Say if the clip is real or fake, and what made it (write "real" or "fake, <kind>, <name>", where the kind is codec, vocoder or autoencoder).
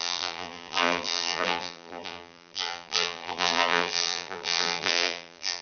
fake, vocoder, BigVGAN v2